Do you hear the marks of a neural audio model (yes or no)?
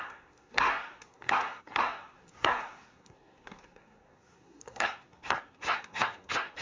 yes